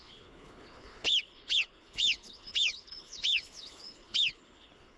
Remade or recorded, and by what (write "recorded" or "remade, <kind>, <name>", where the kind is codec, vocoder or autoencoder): remade, codec, HILCodec